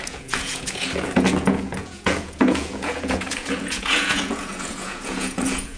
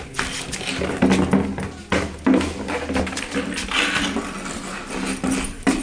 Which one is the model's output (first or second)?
first